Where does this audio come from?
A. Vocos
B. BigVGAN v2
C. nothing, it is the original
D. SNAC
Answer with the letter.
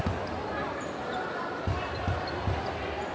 C